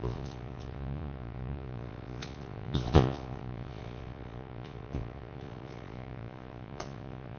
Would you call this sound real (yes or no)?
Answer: no